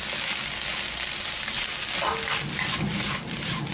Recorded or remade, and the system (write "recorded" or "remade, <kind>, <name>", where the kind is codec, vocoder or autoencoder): recorded